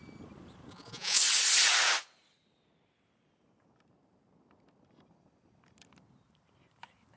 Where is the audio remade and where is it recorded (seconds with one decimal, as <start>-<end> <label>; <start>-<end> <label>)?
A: 0.0-0.7 recorded; 0.7-1.2 remade; 1.2-7.2 recorded